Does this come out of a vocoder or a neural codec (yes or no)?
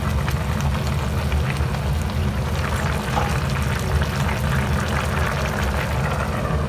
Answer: no